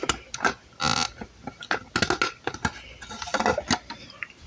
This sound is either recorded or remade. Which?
recorded